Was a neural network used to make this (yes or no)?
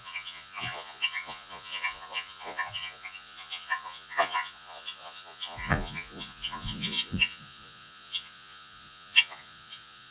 yes